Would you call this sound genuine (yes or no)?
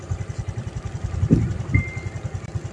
yes